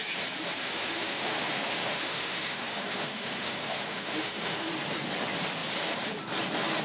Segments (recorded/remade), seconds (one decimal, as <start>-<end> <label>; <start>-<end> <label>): 0.0-0.6 recorded; 0.6-4.7 remade; 4.7-6.8 recorded